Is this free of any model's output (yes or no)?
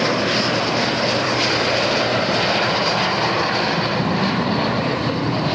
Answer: no